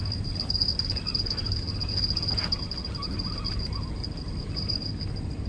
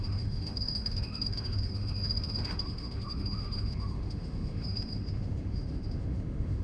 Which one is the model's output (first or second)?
second